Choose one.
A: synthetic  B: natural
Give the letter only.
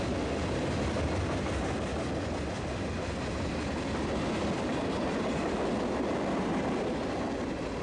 B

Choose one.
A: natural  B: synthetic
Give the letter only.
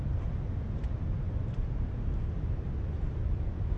A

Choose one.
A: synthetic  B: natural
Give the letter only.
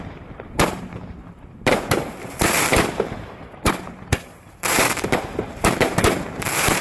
A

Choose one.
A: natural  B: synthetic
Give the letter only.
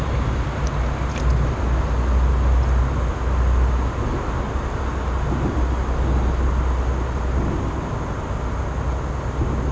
A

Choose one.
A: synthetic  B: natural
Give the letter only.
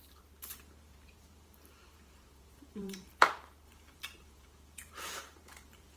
A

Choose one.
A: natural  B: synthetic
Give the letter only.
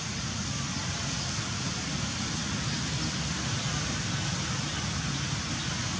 A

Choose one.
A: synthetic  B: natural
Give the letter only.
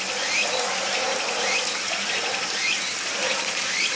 B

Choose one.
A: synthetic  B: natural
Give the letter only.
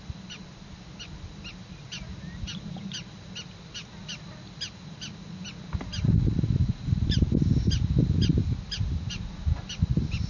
B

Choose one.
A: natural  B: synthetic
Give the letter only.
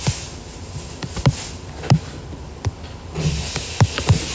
A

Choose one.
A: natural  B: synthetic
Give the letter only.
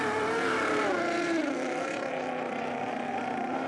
B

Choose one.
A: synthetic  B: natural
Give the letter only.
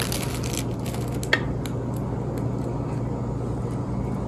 B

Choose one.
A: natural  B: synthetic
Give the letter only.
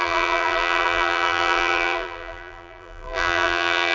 B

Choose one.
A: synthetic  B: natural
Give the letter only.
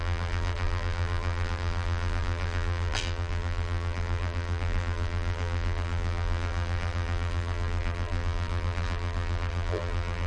A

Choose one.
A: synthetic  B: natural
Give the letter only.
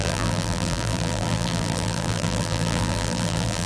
A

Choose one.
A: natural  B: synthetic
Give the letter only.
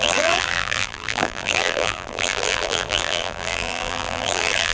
B